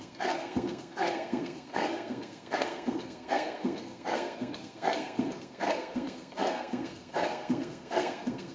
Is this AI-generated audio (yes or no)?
yes